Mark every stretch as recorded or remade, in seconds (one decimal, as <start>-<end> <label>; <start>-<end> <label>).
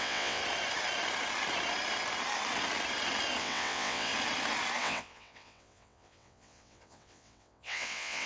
0.0-0.4 remade; 0.4-3.4 recorded; 3.4-4.1 remade; 4.1-4.8 recorded; 4.8-8.3 remade